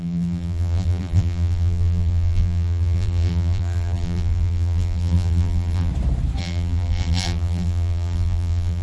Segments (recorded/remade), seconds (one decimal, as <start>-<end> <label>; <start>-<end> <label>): 0.0-5.9 remade; 5.9-6.4 recorded; 6.4-8.8 remade